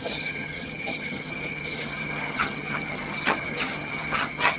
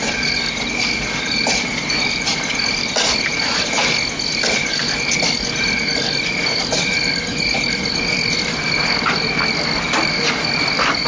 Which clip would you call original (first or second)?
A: second